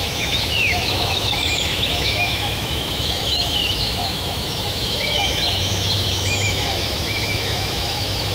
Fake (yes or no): yes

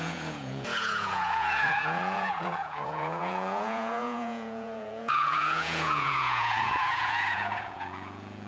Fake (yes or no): yes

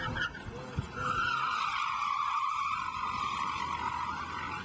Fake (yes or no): no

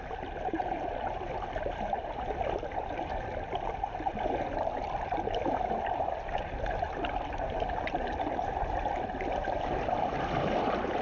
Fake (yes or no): no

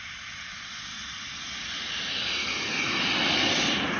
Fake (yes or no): no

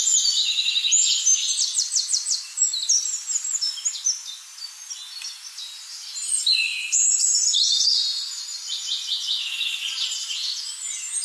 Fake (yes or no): no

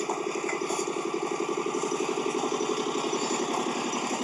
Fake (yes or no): no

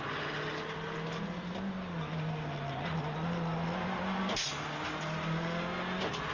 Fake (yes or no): no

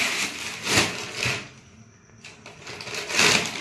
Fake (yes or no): no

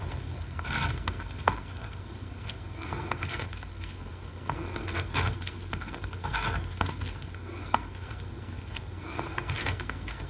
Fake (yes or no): yes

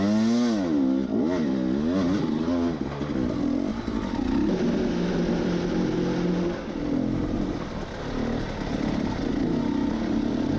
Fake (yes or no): no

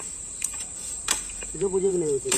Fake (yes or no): yes